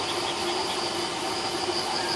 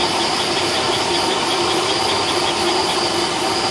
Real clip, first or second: first